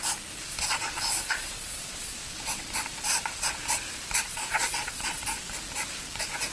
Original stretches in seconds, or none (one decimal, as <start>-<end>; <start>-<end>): 0.0-0.5; 2.2-4.3; 5.2-6.5